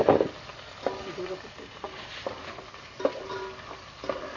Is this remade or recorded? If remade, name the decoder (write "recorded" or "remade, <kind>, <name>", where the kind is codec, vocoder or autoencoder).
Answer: recorded